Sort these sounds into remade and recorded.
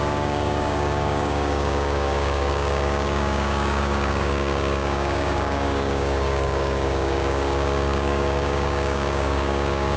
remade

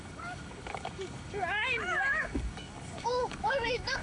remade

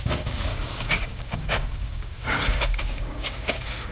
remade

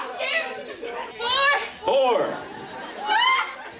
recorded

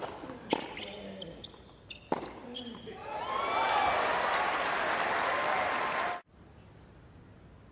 recorded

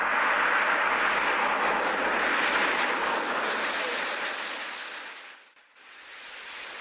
recorded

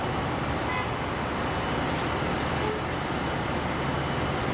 recorded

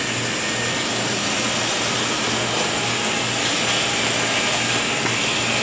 recorded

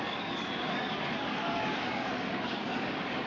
remade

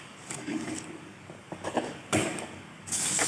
remade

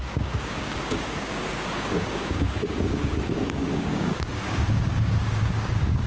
remade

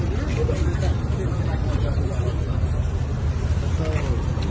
recorded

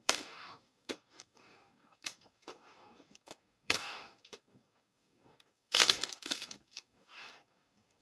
remade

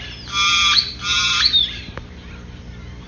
recorded